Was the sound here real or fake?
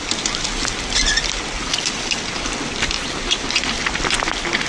real